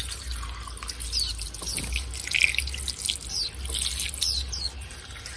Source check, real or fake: real